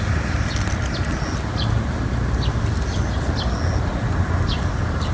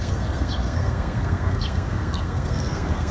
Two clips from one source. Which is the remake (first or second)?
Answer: second